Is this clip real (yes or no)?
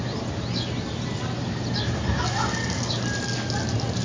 yes